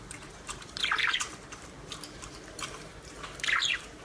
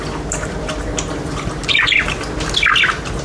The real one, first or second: second